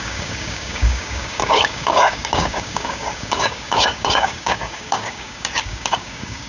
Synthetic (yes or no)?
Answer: yes